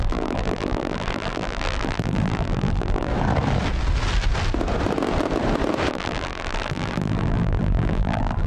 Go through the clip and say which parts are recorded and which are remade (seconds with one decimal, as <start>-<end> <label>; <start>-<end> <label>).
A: 0.0-3.1 remade; 3.1-5.9 recorded; 5.9-8.5 remade

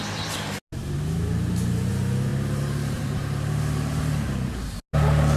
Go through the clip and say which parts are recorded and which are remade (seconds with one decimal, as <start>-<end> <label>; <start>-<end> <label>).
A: 0.0-0.8 recorded; 0.8-1.9 remade; 1.9-2.3 recorded; 2.3-4.7 remade; 4.7-5.4 recorded

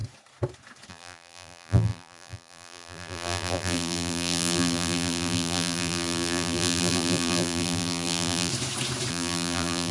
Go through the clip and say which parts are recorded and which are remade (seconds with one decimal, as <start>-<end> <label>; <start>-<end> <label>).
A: 0.0-0.9 recorded; 0.9-8.5 remade; 8.5-9.1 recorded; 9.1-9.9 remade

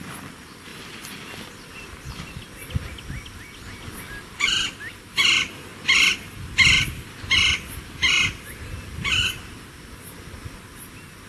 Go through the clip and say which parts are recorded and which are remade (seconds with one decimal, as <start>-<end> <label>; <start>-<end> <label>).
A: 0.0-0.7 recorded; 0.7-2.3 remade; 2.3-11.3 recorded

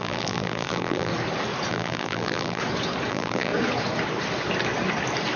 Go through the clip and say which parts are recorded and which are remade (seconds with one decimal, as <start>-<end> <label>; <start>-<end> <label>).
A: 0.0-1.1 remade; 1.1-1.7 recorded; 1.7-2.6 remade; 2.6-3.1 recorded; 3.1-3.5 remade; 3.5-5.4 recorded

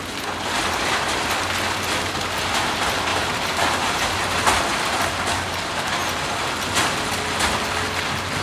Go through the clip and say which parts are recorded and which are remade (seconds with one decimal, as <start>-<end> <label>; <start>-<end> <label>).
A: 0.0-3.1 recorded; 3.1-4.5 remade; 4.5-8.4 recorded

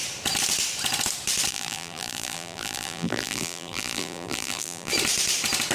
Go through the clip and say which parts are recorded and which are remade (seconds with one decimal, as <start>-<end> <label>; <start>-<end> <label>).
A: 0.0-1.5 recorded; 1.5-4.9 remade; 4.9-5.7 recorded

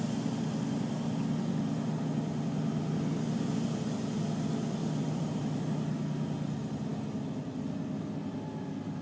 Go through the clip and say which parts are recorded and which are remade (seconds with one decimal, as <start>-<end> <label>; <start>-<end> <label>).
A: 0.0-4.8 recorded; 4.8-5.6 remade; 5.6-9.0 recorded